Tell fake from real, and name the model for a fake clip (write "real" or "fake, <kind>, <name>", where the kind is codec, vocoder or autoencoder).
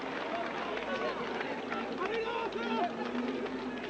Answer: real